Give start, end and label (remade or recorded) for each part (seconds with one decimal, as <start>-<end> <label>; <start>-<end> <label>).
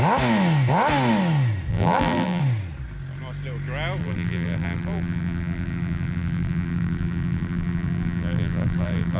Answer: 0.0-1.7 recorded; 1.7-2.4 remade; 2.4-4.0 recorded; 4.0-9.2 remade